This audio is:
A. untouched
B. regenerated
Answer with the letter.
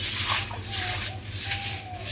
A